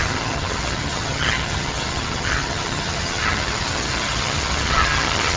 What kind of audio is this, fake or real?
fake